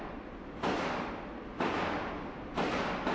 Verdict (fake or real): real